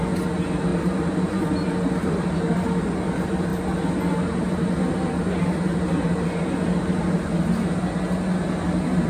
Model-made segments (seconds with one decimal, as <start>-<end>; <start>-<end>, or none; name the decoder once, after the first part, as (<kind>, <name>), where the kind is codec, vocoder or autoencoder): 0.7-1.7 (vocoder, BigVGAN v2)